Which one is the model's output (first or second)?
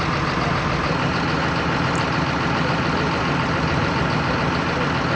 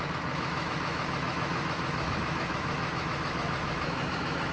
second